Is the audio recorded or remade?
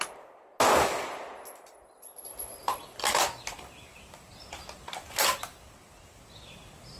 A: recorded